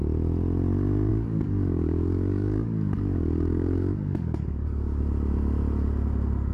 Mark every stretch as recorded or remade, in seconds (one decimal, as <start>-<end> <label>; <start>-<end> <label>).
0.0-1.1 recorded; 1.1-5.0 remade; 5.0-6.5 recorded